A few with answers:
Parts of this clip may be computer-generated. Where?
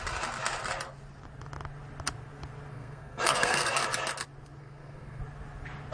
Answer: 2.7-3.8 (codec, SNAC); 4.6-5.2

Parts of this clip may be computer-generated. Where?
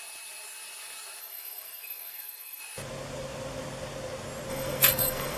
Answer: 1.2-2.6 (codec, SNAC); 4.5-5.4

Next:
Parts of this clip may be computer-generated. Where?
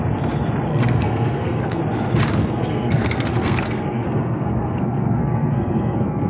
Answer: 0.7-1.8 (codec, SNAC); 2.4-6.3